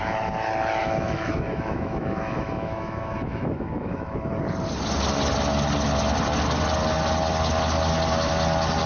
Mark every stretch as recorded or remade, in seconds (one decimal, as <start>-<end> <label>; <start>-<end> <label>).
0.0-0.8 recorded; 0.8-4.3 remade; 4.3-8.9 recorded